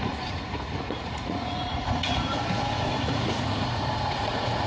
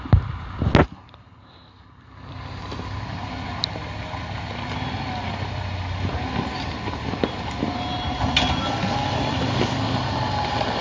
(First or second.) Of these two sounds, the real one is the second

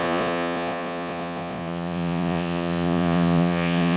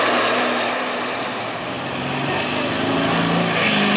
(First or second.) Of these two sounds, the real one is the second